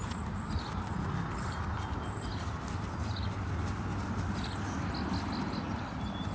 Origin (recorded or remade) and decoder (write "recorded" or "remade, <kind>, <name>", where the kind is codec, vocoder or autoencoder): recorded